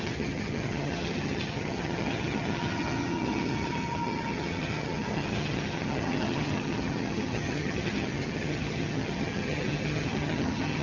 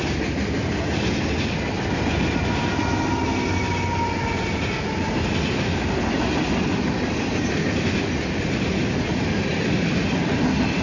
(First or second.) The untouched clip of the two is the second